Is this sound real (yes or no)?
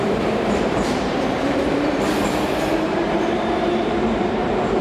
no